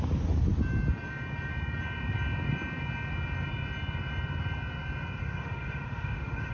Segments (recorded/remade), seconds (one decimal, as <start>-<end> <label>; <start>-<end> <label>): 0.0-5.2 recorded; 5.2-6.5 remade